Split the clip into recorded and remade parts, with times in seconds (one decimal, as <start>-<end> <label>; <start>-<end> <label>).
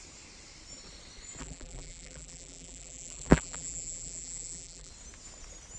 0.0-1.4 recorded; 1.4-4.9 remade; 4.9-5.8 recorded